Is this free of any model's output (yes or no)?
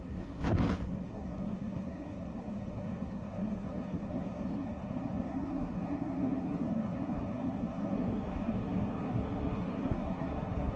no